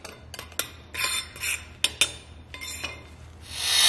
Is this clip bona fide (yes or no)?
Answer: yes